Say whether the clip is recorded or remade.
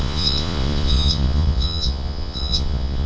remade